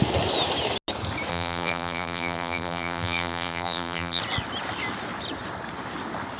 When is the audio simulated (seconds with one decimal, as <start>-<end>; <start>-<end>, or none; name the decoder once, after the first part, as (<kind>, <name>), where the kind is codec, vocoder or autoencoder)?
1.3-4.2 (vocoder, BigVGAN v2)